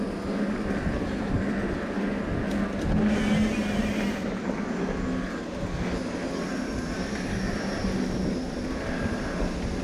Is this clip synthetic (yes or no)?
no